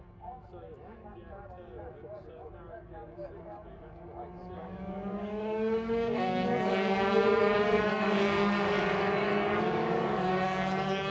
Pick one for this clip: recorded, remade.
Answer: remade